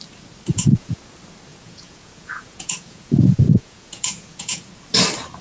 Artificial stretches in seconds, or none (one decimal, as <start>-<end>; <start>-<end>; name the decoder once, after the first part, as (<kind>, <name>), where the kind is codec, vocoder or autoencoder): 0.5-1.0 (vocoder, Vocos); 1.5-4.7